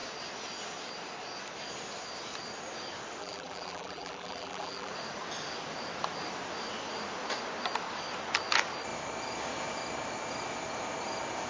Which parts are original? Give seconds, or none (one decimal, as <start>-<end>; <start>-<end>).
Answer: 0.0-3.2; 4.9-11.5